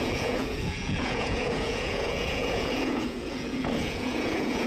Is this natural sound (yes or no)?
no